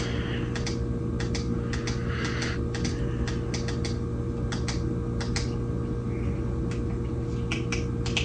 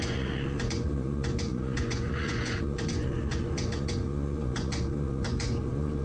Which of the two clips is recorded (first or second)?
first